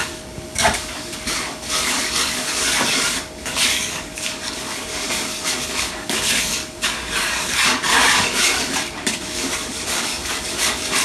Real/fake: fake